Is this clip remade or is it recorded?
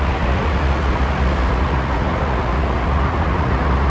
remade